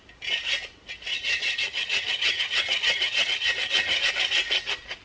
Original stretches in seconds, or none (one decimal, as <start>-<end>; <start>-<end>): 0.0-1.1; 4.1-5.0